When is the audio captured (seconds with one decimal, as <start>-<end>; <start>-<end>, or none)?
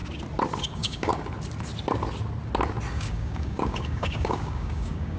0.0-0.6; 1.1-2.9